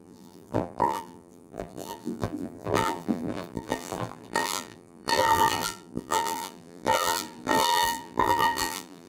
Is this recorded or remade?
remade